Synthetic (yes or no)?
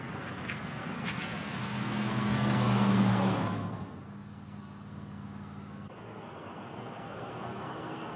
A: yes